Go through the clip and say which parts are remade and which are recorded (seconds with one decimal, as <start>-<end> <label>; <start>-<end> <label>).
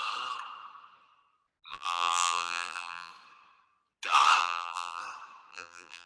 0.0-1.7 recorded; 1.7-3.1 remade; 3.1-4.4 recorded; 4.4-5.0 remade; 5.0-5.5 recorded; 5.5-6.1 remade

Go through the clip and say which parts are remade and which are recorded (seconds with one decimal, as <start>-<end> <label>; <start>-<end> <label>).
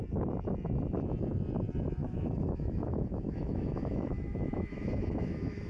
0.0-2.0 recorded; 2.0-5.7 remade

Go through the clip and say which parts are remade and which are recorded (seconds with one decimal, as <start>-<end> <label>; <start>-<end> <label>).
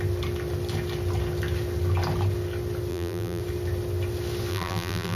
0.0-2.9 recorded; 2.9-3.4 remade; 3.4-4.5 recorded; 4.5-5.2 remade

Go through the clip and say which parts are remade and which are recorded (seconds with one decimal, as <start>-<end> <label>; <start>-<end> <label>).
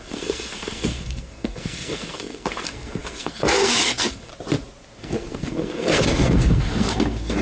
0.0-4.3 remade; 4.3-5.0 recorded; 5.0-7.4 remade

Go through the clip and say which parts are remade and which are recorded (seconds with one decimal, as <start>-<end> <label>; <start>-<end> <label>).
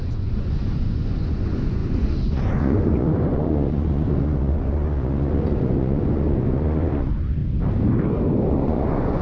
0.0-7.4 remade; 7.4-8.5 recorded; 8.5-9.2 remade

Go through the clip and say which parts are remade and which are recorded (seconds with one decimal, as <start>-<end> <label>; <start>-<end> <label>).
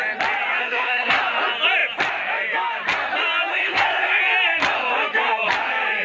0.0-0.6 recorded; 0.6-1.2 remade; 1.2-3.5 recorded; 3.5-4.2 remade; 4.2-6.0 recorded